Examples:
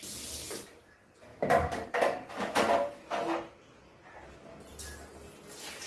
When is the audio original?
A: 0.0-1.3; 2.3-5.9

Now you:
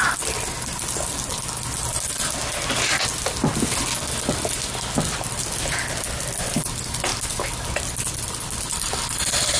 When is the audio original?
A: 0.0-9.6